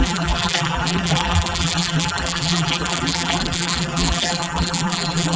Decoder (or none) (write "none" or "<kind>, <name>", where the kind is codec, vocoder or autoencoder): vocoder, BigVGAN v2